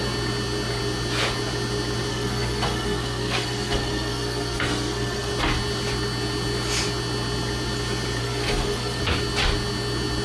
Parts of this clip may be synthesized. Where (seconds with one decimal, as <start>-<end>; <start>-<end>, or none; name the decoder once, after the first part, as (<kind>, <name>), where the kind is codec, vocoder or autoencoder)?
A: 2.1-5.3 (codec, SNAC); 8.2-9.0